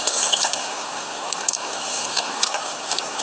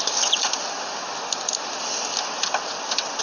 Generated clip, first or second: first